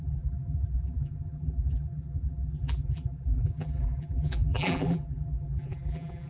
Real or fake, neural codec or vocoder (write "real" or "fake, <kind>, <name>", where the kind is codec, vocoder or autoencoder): fake, vocoder, BigVGAN v2